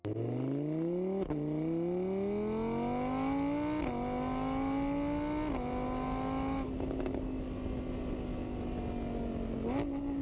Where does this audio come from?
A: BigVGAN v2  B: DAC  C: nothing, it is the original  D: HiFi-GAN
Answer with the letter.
C